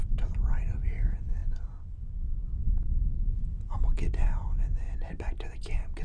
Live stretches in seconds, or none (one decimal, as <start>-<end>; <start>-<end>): 0.0-6.0

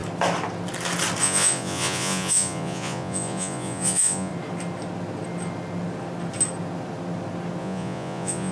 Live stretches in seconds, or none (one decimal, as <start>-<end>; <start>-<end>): 0.0-1.2; 4.3-7.6

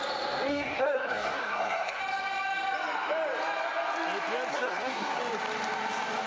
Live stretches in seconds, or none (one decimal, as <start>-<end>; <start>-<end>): 0.0-0.5; 2.0-4.5; 5.2-6.3

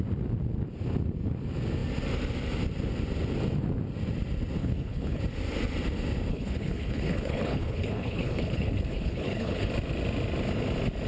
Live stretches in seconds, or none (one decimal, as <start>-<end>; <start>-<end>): 0.0-4.6; 5.2-6.3; 9.7-11.1

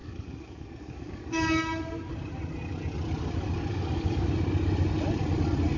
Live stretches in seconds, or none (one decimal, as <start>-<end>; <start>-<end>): 2.1-3.7; 4.3-5.8

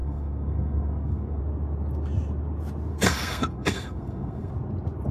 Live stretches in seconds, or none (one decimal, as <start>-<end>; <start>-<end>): 1.4-2.9; 4.5-5.1

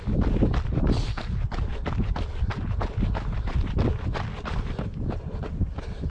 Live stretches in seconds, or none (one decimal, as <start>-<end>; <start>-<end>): 0.0-6.1